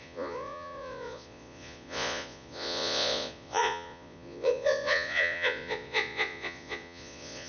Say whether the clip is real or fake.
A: fake